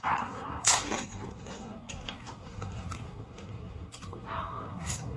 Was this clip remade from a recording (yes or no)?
yes